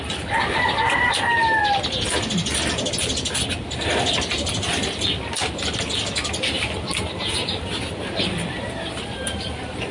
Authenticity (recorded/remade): recorded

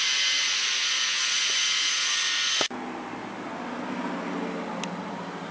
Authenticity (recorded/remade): recorded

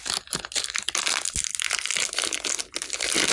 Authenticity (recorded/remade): recorded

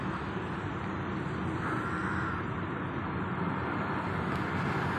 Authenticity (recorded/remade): recorded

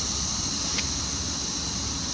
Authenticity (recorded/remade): recorded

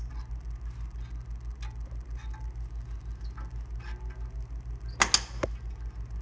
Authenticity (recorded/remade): recorded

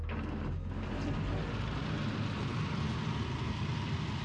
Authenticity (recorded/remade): recorded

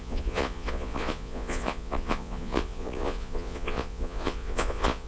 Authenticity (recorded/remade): remade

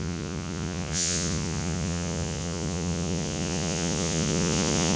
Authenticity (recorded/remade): remade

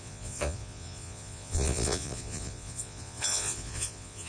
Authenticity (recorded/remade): remade